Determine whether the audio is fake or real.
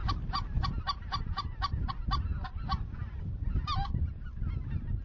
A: real